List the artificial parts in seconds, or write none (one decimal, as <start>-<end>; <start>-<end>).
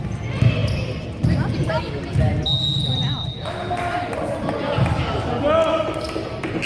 none